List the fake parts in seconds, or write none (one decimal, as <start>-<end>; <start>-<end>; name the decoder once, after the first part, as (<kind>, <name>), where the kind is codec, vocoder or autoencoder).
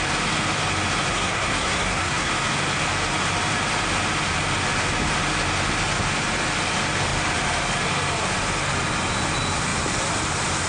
1.1-2.3 (codec, SNAC)